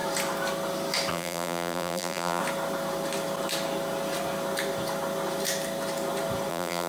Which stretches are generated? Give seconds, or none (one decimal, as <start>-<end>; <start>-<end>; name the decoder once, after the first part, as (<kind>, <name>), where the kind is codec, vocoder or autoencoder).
1.1-2.4 (vocoder, BigVGAN v2); 6.5-6.9